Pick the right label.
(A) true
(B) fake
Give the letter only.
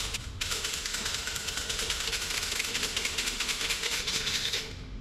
B